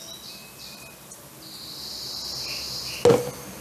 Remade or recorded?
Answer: recorded